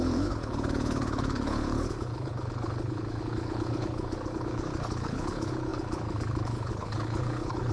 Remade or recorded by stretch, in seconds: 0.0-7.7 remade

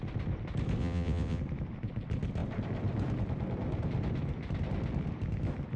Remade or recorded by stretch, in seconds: 0.0-0.8 recorded; 0.8-1.4 remade; 1.4-5.8 recorded